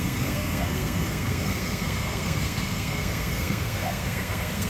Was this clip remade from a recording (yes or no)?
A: yes